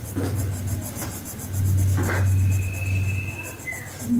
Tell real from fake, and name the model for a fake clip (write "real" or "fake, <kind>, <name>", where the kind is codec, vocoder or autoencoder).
real